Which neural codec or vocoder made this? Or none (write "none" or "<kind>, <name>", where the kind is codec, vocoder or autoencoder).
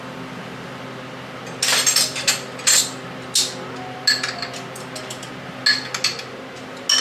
none